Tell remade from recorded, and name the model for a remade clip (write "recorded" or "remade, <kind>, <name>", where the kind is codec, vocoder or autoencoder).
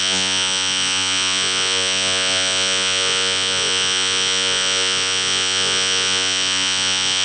remade, vocoder, Vocos